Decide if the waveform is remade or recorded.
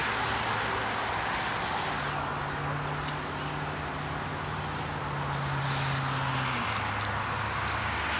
recorded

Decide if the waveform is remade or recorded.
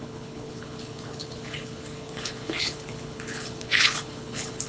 remade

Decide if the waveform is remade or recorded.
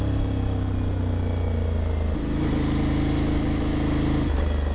recorded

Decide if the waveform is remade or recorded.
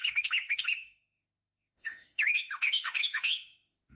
remade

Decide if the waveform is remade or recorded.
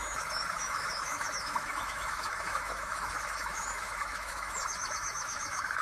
remade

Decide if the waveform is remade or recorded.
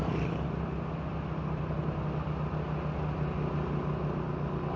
recorded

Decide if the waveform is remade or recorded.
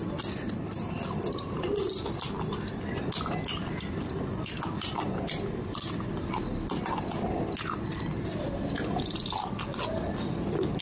recorded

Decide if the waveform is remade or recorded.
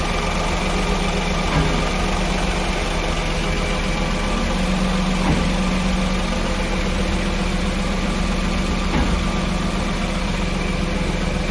recorded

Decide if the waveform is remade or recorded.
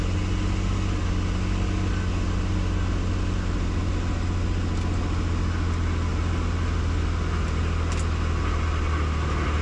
recorded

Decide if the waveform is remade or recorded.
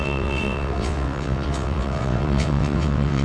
remade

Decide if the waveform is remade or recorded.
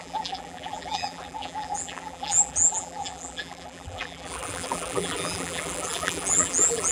remade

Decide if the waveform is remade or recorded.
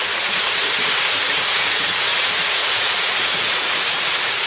remade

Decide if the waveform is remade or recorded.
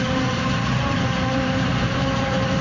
remade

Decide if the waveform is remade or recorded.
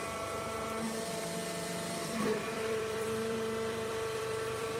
remade